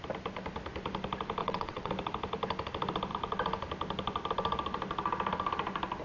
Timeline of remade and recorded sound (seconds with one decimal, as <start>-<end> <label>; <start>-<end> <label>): 0.0-1.4 recorded; 1.4-1.9 remade; 1.9-6.0 recorded